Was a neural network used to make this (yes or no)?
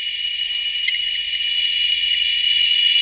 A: yes